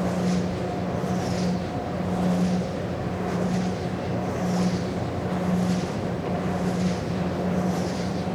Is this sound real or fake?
real